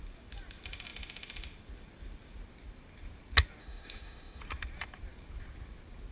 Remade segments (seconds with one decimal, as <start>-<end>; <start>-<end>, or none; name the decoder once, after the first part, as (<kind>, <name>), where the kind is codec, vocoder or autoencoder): 3.6-4.4 (autoencoder, DAC-VAE)